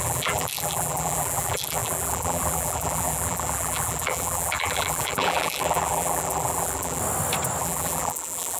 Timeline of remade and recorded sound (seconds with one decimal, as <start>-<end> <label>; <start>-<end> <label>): 0.0-7.0 remade; 7.0-7.6 recorded; 7.6-8.6 remade